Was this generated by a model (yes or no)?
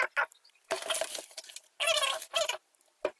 no